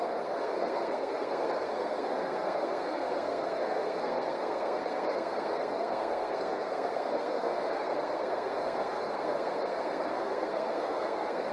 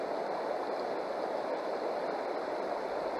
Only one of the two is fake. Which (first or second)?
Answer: first